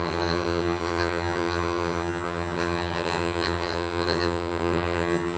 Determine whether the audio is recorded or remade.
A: remade